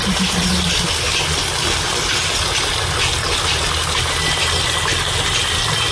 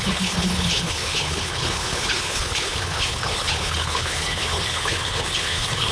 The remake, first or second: second